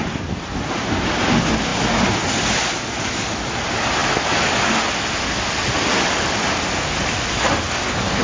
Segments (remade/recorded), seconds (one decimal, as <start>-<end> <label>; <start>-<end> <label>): 0.0-8.2 recorded